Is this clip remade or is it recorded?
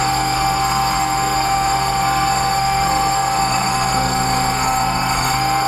remade